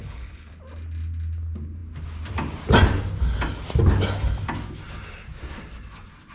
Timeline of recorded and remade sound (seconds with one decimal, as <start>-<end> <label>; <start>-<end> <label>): 0.0-0.5 remade; 0.5-6.3 recorded